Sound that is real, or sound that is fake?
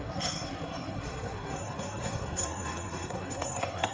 fake